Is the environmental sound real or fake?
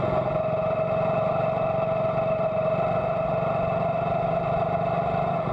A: real